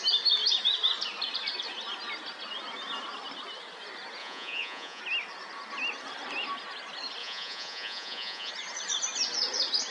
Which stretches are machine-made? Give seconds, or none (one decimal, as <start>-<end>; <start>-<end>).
4.2-5.0; 7.2-8.5